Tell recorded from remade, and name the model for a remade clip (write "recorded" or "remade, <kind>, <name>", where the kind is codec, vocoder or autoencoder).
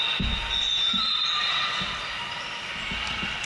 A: recorded